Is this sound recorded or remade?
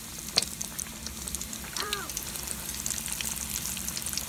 remade